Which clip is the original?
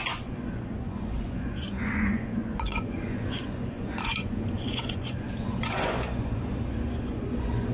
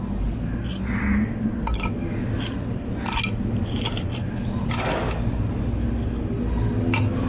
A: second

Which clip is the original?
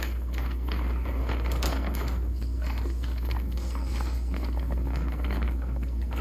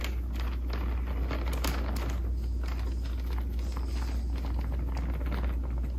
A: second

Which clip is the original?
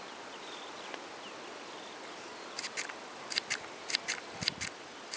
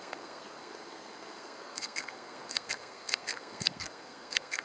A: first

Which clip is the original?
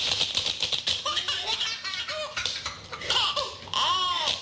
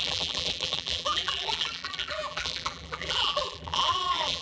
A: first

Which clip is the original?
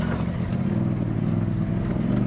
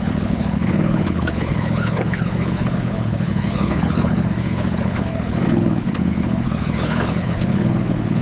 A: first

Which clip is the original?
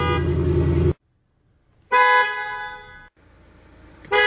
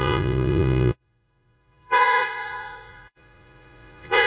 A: first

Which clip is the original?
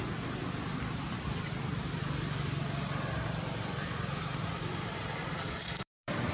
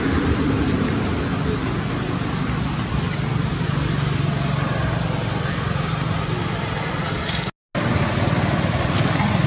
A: second